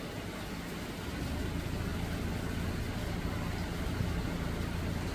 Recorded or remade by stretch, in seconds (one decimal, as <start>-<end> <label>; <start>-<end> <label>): 0.0-5.1 recorded